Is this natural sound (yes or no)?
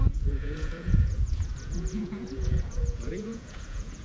no